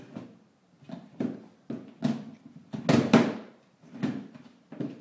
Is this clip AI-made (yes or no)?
no